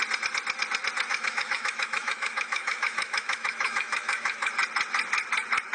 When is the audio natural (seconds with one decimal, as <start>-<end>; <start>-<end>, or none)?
0.0-1.1; 4.5-5.7